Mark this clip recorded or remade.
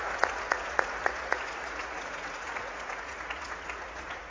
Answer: remade